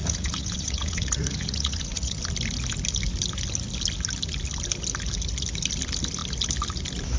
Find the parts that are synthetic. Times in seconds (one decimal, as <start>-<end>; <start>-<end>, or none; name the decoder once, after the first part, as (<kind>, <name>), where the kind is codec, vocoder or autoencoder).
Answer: 0.0-2.2 (vocoder, Vocos)